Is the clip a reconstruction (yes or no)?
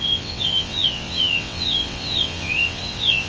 yes